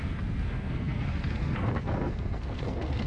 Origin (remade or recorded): remade